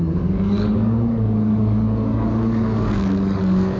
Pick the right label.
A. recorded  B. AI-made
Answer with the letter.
B